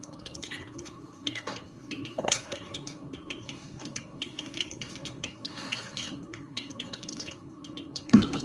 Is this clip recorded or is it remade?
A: remade